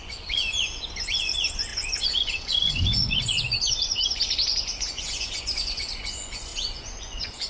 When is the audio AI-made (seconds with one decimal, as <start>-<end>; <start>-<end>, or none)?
0.0-7.5